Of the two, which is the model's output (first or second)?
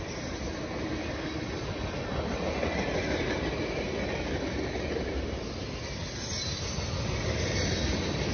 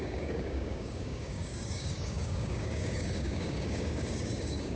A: second